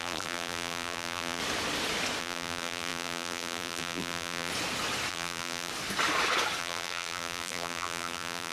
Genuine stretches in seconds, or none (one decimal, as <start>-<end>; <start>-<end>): 1.4-2.2; 4.5-5.1; 5.7-6.6